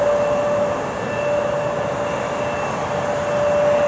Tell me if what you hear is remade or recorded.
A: recorded